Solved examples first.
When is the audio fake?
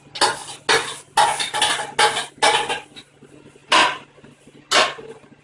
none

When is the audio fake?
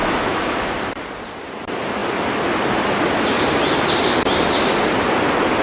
0.0-0.7 (autoencoder, DAC-VAE)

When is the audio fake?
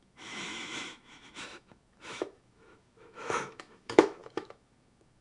0.0-5.2 (autoencoder, DAC-VAE)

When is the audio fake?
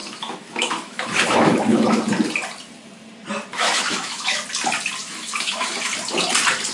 0.0-2.0 (autoencoder, DAC-VAE); 3.5-4.4; 5.0-5.9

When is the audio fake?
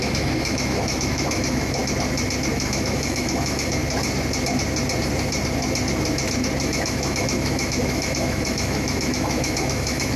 0.0-1.8 (autoencoder, DAC-VAE); 2.5-3.8; 6.6-10.2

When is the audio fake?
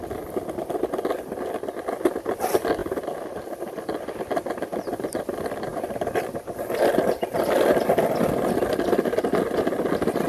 none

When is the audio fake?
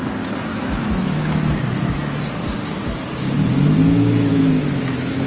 0.5-2.2 (autoencoder, DAC-VAE); 4.3-5.3